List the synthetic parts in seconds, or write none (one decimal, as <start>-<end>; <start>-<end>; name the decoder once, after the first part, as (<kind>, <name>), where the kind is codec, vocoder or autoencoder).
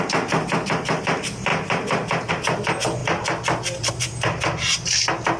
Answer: none